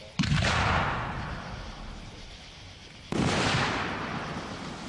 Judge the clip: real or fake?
fake